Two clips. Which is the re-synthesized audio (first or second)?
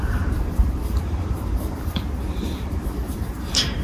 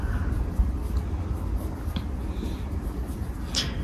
first